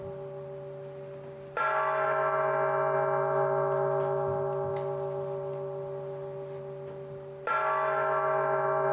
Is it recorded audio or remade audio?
recorded